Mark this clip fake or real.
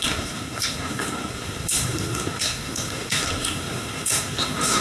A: fake